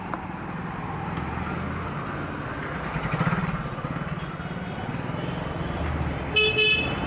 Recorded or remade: recorded